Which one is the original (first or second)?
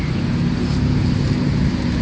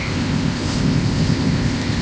first